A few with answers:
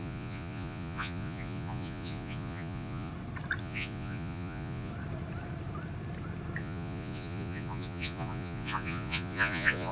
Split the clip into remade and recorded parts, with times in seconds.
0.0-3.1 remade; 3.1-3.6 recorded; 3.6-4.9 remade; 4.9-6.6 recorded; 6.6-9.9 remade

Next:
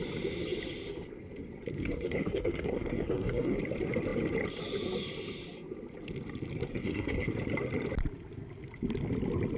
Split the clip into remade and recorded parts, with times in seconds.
0.0-1.8 recorded; 1.8-3.6 remade; 3.6-6.7 recorded; 6.7-7.3 remade; 7.3-9.6 recorded

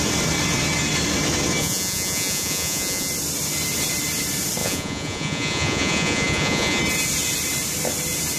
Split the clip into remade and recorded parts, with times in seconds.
0.0-1.6 recorded; 1.6-3.1 remade; 3.1-4.6 recorded; 4.6-6.8 remade; 6.8-8.4 recorded

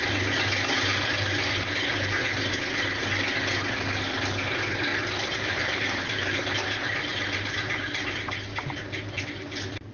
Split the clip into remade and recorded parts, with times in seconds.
0.0-4.9 recorded; 4.9-9.2 remade; 9.2-9.9 recorded

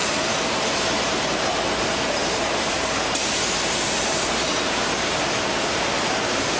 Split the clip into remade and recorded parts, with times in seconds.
0.0-6.6 remade

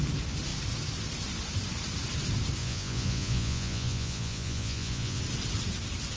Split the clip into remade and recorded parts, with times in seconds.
0.0-2.6 recorded; 2.6-5.2 remade; 5.2-6.2 recorded

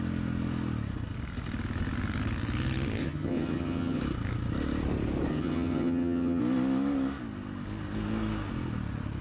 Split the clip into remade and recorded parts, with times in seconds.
0.0-3.0 recorded; 3.0-4.0 remade; 4.0-5.3 recorded; 5.3-6.4 remade; 6.4-9.2 recorded